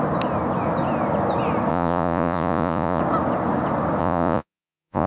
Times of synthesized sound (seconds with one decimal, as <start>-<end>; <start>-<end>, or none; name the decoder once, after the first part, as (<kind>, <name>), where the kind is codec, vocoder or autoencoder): 1.7-3.0 (vocoder, Vocos); 4.0-5.1